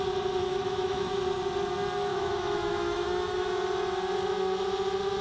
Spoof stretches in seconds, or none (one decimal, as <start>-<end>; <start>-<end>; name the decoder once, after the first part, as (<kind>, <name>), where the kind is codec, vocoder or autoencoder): 0.4-1.1 (autoencoder, DAC-VAE); 2.1-3.5